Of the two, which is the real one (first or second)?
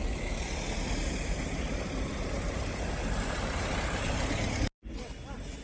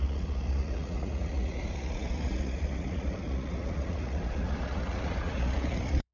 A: first